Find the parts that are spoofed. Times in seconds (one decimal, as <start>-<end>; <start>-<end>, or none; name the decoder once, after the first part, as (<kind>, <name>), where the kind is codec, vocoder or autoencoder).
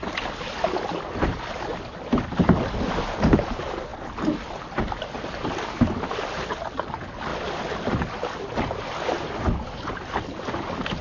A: none